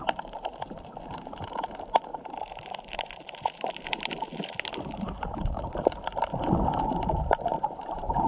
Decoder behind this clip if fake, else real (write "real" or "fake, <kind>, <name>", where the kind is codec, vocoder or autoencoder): fake, vocoder, BigVGAN v2